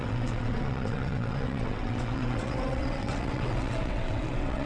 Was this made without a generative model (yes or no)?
no